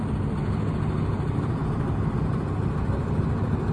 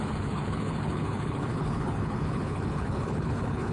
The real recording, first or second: first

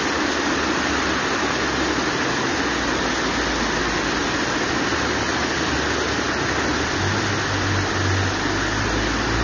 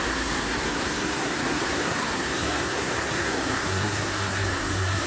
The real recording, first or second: first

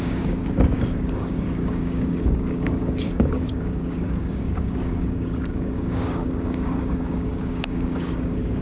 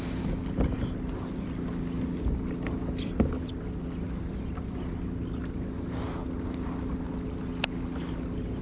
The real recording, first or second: second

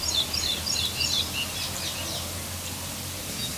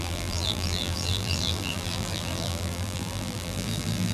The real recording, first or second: first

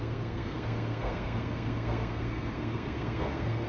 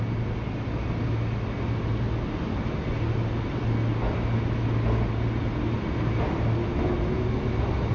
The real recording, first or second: second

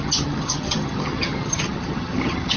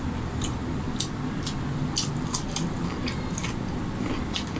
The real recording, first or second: second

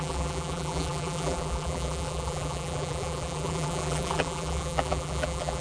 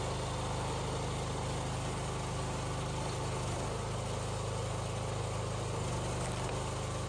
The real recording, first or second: second